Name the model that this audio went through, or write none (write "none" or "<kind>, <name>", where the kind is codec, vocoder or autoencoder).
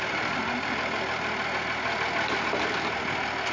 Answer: none